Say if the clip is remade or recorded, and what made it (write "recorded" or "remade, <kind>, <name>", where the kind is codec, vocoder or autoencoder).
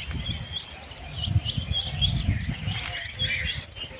recorded